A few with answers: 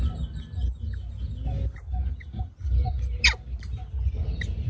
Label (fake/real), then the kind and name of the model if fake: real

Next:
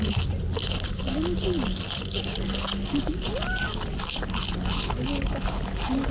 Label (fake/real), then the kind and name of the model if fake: real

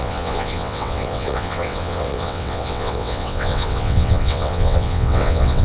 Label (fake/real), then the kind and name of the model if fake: fake, vocoder, WaveNeXt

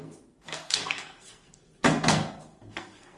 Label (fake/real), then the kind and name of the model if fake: fake, codec, SNAC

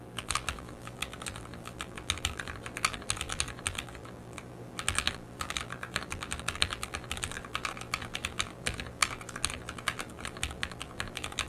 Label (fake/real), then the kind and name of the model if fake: fake, vocoder, BigVGAN v2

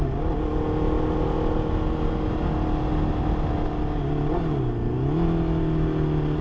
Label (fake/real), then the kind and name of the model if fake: real